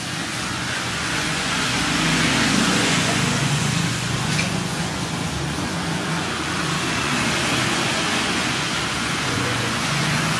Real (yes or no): no